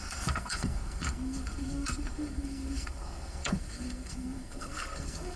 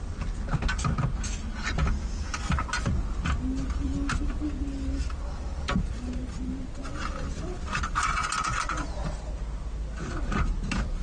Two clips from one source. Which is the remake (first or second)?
first